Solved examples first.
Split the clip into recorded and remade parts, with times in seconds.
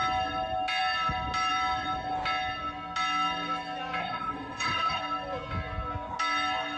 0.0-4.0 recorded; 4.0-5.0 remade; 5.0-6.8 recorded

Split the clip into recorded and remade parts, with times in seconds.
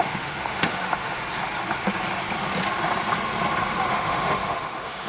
0.0-1.2 remade; 1.2-3.9 recorded; 3.9-5.1 remade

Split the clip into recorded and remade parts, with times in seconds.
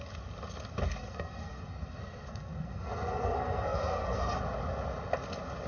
0.0-1.0 recorded; 1.0-4.4 remade; 4.4-5.7 recorded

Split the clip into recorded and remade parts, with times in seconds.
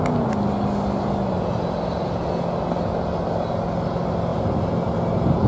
0.0-5.5 recorded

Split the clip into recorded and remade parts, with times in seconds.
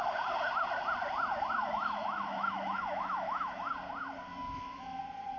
0.0-1.6 recorded; 1.6-3.7 remade; 3.7-4.3 recorded; 4.3-5.0 remade; 5.0-5.4 recorded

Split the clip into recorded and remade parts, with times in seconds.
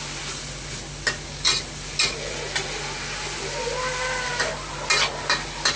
0.0-5.8 recorded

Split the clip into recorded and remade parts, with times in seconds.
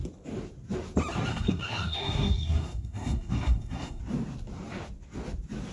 0.0-1.3 recorded; 1.3-4.0 remade; 4.0-5.7 recorded